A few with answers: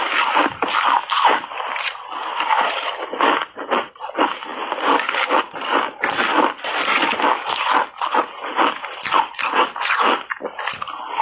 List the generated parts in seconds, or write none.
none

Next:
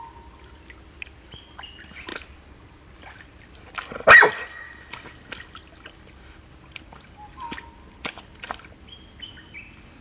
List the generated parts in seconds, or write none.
none

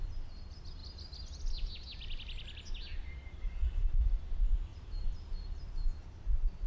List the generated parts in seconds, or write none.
3.0-4.2 (vocoder, BigVGAN v2); 4.7-6.1

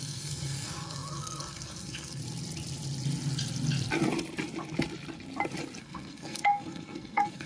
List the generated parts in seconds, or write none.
0.0-2.2 (codec, SNAC); 5.8-7.5